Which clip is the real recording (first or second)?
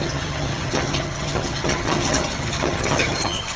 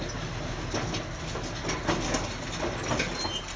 second